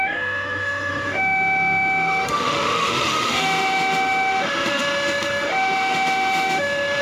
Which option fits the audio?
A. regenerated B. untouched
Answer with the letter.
A